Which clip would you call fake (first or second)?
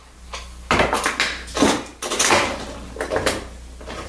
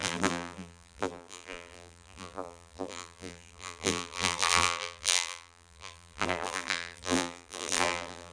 second